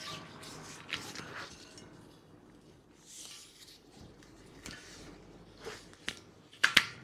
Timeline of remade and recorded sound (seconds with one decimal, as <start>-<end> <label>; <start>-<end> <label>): 0.0-3.4 recorded; 3.4-5.1 remade; 5.1-7.0 recorded